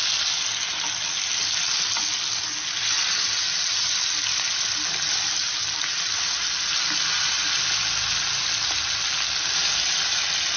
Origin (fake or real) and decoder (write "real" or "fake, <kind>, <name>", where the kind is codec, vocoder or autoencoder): real